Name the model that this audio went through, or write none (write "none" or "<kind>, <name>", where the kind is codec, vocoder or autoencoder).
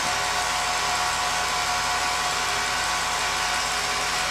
none